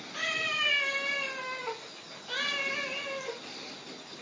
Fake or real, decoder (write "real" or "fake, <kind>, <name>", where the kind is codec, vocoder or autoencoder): real